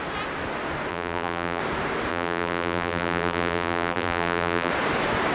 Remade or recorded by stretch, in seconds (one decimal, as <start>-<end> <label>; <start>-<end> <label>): 0.0-0.9 recorded; 0.9-1.6 remade; 1.6-2.1 recorded; 2.1-4.7 remade; 4.7-5.3 recorded